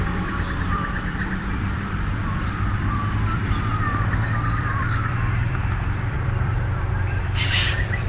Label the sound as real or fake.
fake